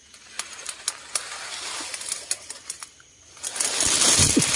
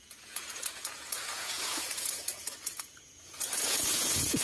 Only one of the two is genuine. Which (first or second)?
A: first